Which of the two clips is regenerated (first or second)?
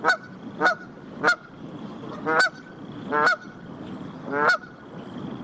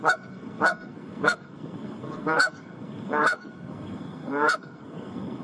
second